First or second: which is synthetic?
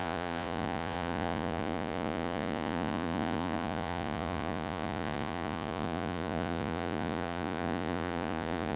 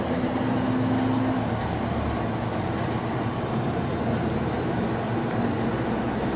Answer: first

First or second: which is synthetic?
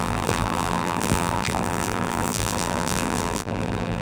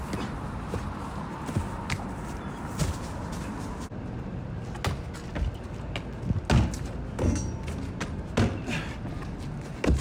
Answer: first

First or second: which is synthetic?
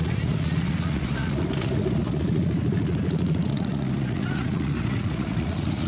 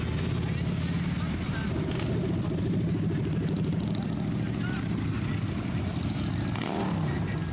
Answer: first